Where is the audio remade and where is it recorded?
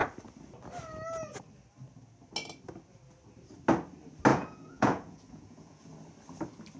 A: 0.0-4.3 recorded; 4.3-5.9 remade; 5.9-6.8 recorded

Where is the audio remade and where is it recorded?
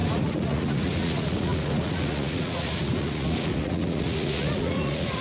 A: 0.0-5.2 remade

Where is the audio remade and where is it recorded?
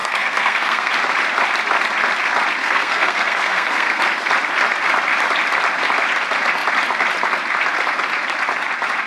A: 0.0-0.9 remade; 0.9-2.6 recorded; 2.6-4.0 remade; 4.0-9.1 recorded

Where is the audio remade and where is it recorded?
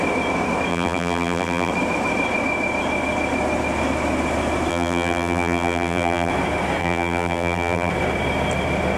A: 0.0-0.7 recorded; 0.7-1.7 remade; 1.7-4.7 recorded; 4.7-6.3 remade; 6.3-6.8 recorded; 6.8-7.9 remade; 7.9-9.0 recorded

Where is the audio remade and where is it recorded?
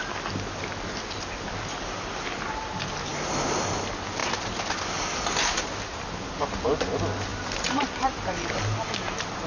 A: 0.0-9.5 recorded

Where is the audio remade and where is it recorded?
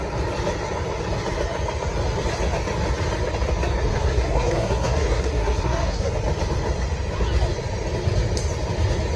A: 0.0-3.9 recorded; 3.9-6.1 remade; 6.1-9.2 recorded